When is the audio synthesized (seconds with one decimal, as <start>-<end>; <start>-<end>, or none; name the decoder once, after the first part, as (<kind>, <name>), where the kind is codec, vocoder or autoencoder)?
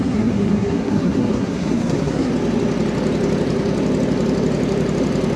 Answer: 0.0-2.3 (codec, SNAC)